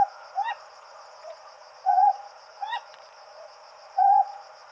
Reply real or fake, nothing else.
fake